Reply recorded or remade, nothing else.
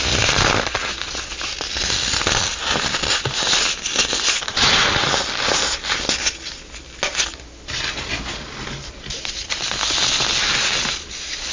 recorded